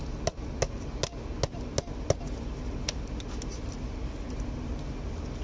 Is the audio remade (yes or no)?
no